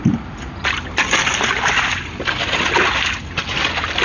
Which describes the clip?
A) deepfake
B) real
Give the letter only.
B